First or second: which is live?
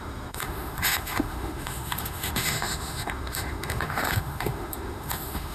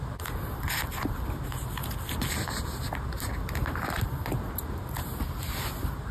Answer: second